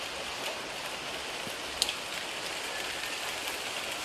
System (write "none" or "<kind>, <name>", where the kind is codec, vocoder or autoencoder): none